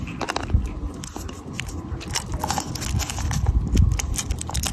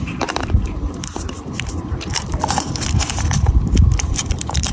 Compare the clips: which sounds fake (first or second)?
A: second